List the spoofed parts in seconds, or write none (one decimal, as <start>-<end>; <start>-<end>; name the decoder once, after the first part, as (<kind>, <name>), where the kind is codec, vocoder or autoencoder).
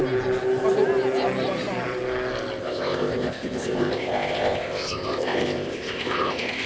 2.6-6.7 (codec, ZipCodec)